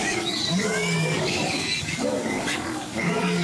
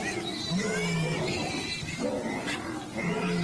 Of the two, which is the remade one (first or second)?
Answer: first